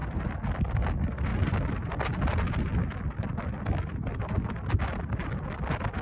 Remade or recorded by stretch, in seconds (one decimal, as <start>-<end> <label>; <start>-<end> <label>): 0.0-6.0 recorded